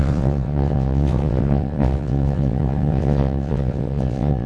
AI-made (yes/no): yes